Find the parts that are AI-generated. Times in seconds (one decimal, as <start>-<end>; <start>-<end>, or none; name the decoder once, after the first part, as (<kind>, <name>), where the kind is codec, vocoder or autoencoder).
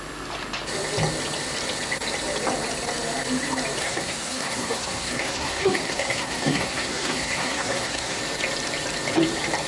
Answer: 3.8-8.2 (codec, SNAC)